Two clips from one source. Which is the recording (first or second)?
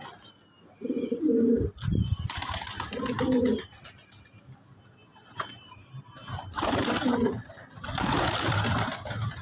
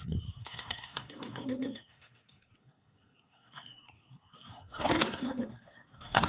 first